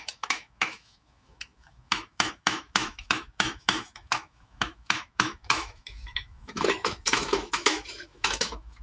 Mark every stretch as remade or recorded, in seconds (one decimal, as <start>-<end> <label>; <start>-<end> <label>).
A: 0.0-8.8 remade